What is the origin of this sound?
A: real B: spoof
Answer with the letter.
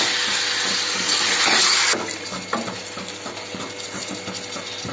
A